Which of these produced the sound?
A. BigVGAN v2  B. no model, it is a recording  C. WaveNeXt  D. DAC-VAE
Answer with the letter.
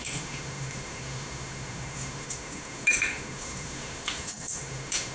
D